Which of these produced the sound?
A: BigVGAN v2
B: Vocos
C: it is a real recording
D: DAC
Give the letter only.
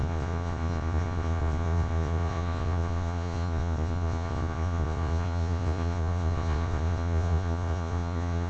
B